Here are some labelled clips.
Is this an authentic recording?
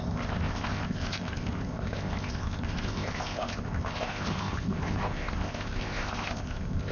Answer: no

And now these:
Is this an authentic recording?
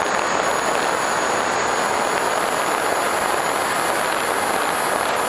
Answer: yes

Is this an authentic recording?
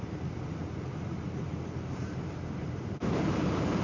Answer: no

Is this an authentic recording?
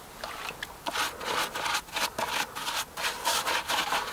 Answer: yes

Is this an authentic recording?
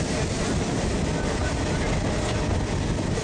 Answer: yes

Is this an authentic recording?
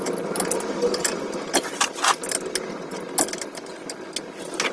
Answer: yes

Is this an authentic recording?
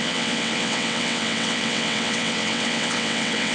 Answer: no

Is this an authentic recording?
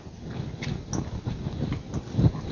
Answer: yes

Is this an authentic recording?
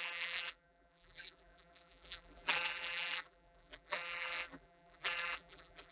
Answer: no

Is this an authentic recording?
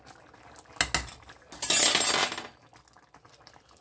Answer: yes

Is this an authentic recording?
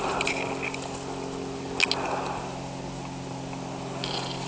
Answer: yes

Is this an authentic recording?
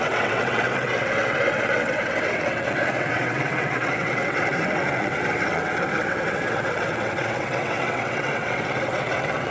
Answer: no